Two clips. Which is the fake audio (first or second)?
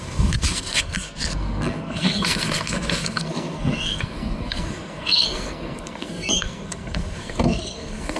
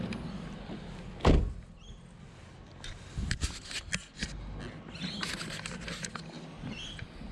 first